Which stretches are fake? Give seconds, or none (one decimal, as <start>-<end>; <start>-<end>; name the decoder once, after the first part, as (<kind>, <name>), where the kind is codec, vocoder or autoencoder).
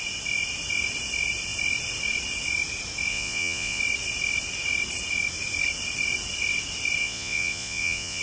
3.1-3.8 (vocoder, Vocos); 7.0-8.2